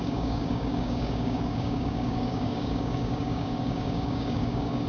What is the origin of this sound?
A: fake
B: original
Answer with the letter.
A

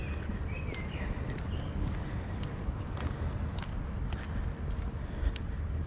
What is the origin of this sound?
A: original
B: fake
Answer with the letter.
A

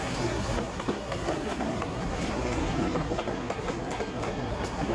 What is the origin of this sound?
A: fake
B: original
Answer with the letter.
A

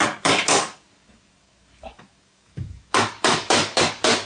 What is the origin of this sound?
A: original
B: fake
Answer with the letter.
B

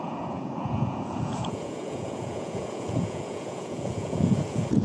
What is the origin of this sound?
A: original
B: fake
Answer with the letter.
B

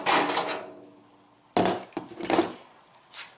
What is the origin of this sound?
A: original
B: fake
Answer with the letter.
A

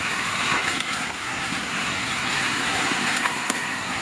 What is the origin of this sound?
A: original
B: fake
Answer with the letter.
B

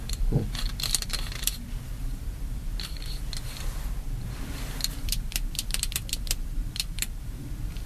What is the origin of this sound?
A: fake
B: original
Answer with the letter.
A